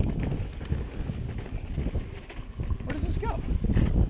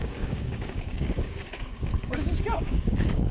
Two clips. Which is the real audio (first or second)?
first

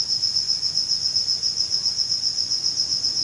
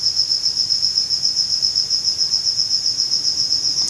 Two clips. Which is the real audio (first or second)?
second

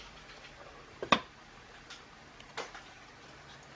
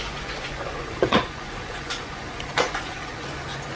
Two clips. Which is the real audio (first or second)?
first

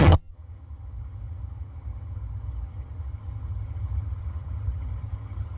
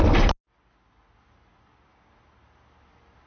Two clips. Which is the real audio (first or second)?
second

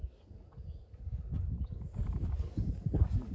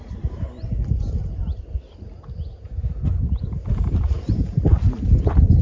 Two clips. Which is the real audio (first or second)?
second